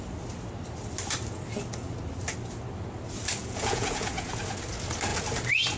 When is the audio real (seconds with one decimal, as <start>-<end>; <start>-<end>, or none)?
0.0-3.4; 4.4-5.8